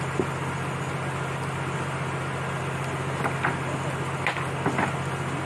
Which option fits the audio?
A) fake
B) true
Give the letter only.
B